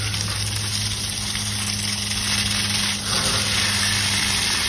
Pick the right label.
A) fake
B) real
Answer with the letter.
B